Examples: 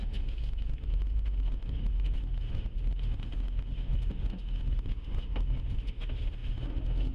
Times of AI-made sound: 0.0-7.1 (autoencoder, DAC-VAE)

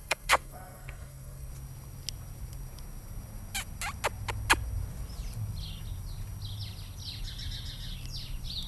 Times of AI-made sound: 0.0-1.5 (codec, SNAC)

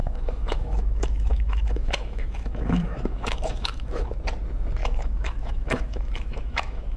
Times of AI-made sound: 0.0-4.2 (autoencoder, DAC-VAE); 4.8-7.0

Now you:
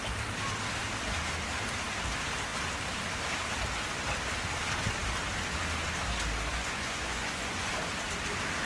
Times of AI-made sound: 6.5-7.7 (vocoder, Vocos)

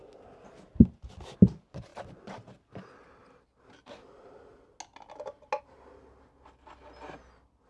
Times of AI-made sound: none

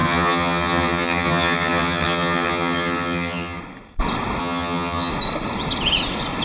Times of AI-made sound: 0.0-3.6 (vocoder, HiFi-GAN); 4.4-5.1

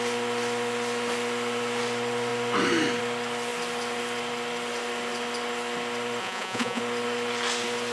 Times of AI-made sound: 6.2-6.8 (vocoder, Vocos)